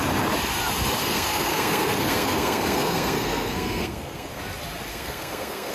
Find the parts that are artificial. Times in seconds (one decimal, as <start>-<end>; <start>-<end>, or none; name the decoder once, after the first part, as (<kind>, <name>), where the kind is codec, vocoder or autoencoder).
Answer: 1.0-4.4 (codec, SNAC); 4.9-5.7